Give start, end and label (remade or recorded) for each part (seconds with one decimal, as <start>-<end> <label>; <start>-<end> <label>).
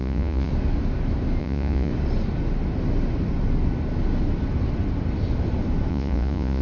0.0-0.5 remade; 0.5-1.4 recorded; 1.4-1.9 remade; 1.9-5.9 recorded; 5.9-6.6 remade